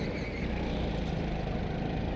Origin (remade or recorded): recorded